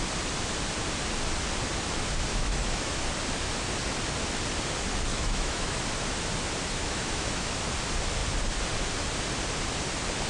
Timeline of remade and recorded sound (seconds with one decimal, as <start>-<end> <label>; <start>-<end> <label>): 0.0-2.3 recorded; 2.3-2.9 remade; 2.9-5.1 recorded; 5.1-5.8 remade; 5.8-6.8 recorded; 6.8-7.5 remade; 7.5-10.3 recorded